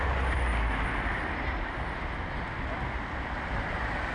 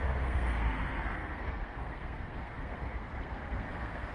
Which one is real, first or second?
first